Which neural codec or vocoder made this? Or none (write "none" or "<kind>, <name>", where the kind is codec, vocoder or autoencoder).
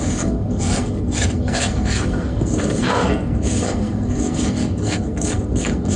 codec, SNAC